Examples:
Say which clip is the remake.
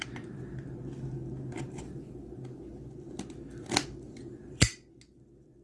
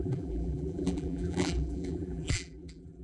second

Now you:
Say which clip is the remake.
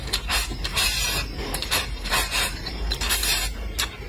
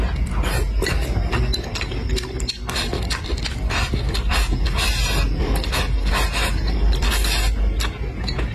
first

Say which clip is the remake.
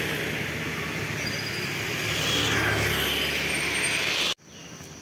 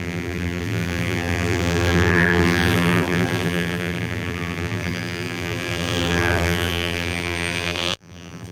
second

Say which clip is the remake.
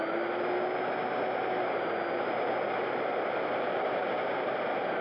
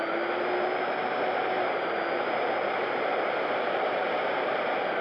second